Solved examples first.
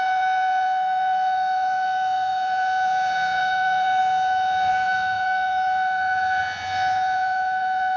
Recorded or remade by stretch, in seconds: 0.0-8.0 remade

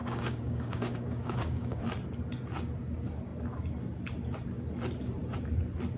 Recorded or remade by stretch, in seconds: 0.0-1.8 remade; 1.8-6.0 recorded

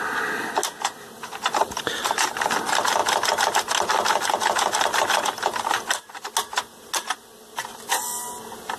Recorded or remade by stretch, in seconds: 0.0-1.6 recorded; 1.6-2.6 remade; 2.6-8.8 recorded